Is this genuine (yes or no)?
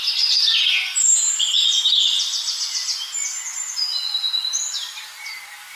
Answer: yes